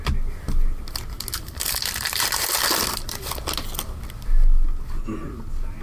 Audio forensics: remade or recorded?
recorded